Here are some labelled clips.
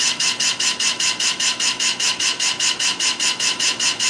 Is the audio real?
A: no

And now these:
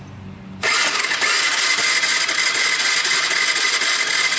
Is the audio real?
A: yes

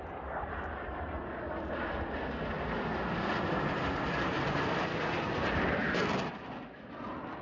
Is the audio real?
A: yes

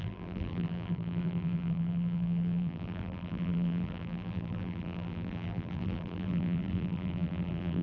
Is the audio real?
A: no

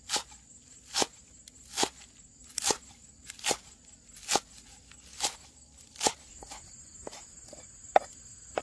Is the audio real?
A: yes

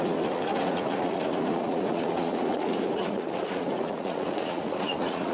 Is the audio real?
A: no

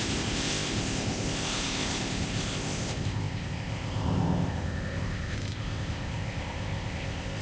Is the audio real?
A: no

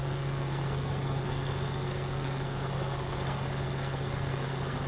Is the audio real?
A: no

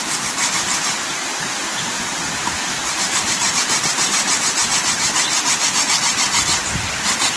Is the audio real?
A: yes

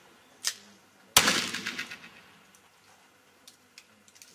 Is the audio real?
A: yes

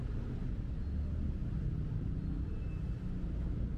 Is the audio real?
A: yes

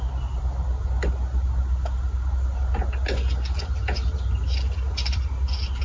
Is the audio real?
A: yes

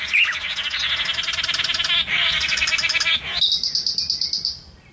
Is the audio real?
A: yes